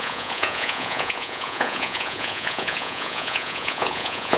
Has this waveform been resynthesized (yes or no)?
yes